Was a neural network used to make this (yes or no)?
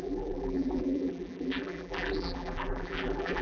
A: yes